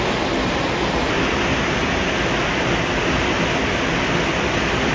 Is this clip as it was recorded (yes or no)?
yes